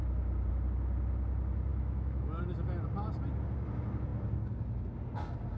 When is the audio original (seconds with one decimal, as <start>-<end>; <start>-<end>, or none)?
0.0-1.7; 2.4-5.6

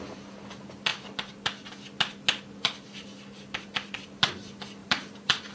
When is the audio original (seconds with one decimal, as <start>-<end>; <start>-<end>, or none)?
0.0-4.8

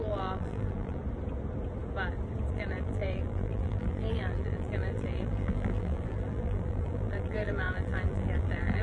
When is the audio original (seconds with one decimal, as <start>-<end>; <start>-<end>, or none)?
1.0-2.5

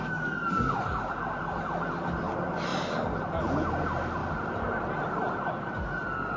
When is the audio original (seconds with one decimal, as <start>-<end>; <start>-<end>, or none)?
0.0-6.4

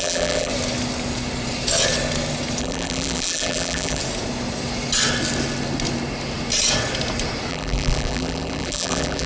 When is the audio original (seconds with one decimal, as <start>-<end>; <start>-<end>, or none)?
0.5-2.6; 4.0-7.5

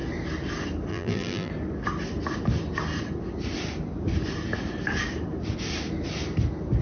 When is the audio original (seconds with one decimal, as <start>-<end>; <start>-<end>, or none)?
0.0-0.9; 1.5-6.8